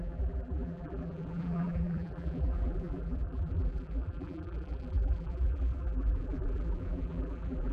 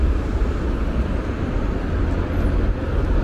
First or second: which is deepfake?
first